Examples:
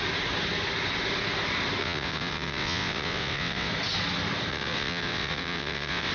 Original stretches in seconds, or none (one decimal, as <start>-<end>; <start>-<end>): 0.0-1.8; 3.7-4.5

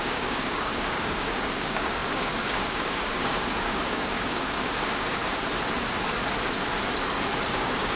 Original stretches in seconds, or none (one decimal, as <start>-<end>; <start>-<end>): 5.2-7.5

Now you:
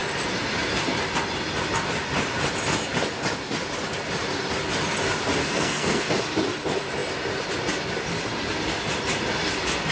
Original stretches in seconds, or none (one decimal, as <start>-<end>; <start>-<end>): 0.0-5.4; 6.1-9.9